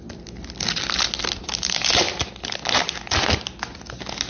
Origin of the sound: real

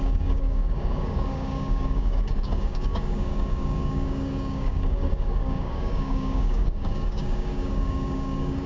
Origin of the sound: fake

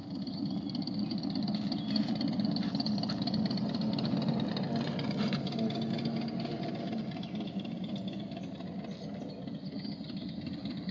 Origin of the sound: real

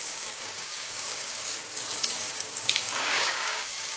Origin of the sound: fake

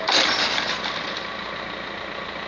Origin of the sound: real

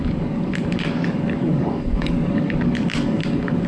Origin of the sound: fake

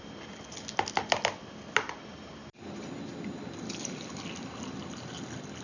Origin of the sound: real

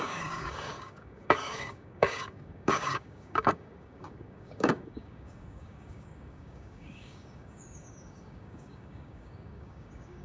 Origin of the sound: fake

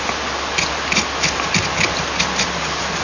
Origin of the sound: real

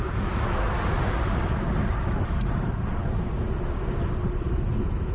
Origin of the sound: real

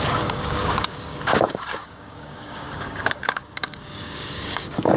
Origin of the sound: fake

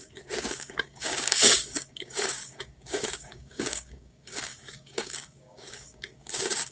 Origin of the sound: fake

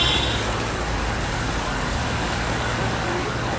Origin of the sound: fake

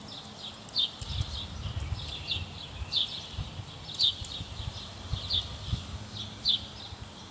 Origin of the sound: real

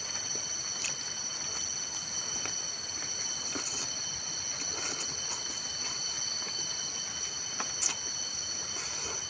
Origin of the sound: real